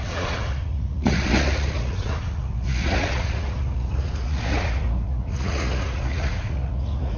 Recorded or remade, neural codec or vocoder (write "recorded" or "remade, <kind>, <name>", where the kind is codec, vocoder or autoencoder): remade, vocoder, Vocos